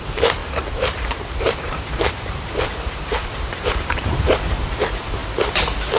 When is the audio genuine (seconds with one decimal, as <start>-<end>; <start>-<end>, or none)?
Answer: 5.2-6.0